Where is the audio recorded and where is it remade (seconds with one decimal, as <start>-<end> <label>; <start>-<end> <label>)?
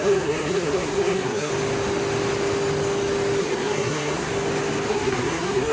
0.0-1.5 remade; 1.5-3.4 recorded; 3.4-4.3 remade; 4.3-4.9 recorded; 4.9-5.7 remade